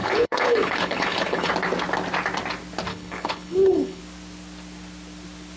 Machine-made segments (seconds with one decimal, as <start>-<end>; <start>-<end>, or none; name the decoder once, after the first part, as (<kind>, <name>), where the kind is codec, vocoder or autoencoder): 0.0-1.5 (codec, HILCodec); 2.9-4.0

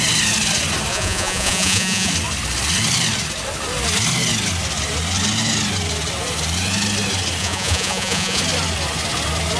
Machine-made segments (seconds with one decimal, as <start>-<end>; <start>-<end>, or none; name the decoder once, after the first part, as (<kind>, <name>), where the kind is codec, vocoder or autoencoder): 0.9-2.1 (vocoder, Vocos); 7.4-8.4

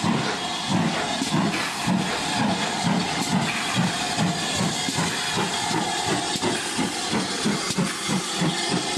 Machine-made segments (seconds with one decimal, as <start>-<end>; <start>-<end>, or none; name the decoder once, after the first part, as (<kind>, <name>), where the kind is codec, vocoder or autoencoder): none